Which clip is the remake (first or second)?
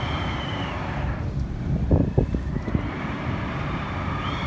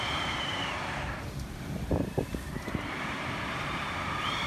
second